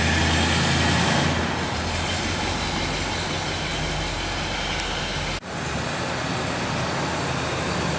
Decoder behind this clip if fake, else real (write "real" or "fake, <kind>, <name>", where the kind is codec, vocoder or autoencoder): real